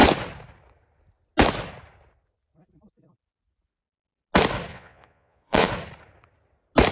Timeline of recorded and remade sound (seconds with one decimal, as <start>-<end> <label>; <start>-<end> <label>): 0.0-4.7 recorded; 4.7-5.7 remade; 5.7-6.9 recorded